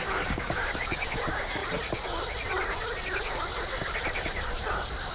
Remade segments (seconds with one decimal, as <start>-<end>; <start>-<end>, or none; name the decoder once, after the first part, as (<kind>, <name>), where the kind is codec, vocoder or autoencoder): 0.0-1.6 (codec, DAC)